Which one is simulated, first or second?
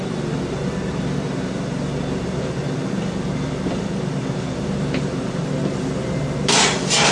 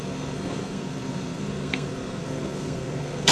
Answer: second